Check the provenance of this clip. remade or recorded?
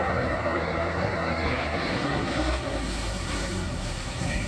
remade